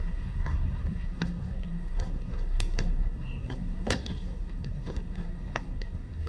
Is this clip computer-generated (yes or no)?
yes